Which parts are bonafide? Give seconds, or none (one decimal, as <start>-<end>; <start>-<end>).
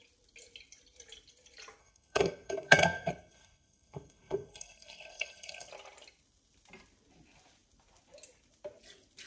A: 0.0-1.8; 5.7-9.3